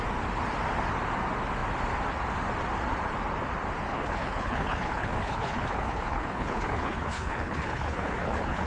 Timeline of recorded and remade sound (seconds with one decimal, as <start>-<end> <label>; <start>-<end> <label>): 0.0-3.9 recorded; 3.9-8.7 remade